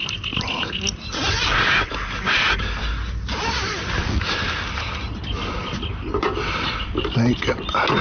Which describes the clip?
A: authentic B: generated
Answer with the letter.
A